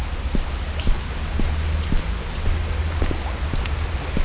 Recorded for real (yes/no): yes